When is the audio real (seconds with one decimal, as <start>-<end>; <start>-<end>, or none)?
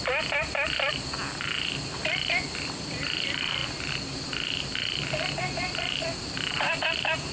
0.0-7.3